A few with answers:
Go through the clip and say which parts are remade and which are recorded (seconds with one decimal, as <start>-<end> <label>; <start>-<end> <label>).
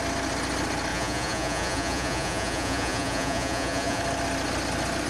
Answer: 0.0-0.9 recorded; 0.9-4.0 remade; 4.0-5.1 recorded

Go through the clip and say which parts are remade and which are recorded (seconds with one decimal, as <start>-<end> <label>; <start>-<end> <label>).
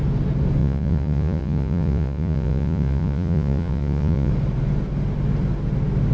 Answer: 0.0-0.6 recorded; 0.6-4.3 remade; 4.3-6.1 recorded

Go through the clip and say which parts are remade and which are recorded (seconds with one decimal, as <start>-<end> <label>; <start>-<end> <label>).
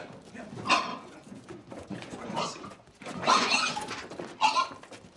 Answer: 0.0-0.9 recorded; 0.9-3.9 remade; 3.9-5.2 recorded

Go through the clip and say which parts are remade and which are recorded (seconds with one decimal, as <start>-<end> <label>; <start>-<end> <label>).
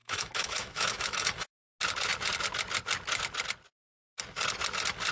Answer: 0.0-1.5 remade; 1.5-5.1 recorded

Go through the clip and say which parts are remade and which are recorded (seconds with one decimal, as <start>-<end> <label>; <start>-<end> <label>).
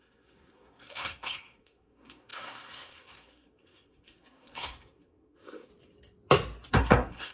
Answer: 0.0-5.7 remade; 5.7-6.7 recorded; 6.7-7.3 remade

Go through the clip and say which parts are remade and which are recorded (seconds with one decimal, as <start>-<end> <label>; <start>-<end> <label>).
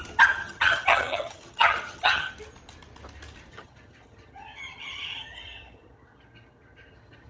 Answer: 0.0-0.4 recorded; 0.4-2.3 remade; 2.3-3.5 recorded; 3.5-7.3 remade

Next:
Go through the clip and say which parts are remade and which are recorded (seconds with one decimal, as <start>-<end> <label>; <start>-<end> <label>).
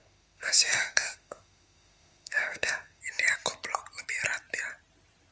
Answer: 0.0-3.0 remade; 3.0-5.3 recorded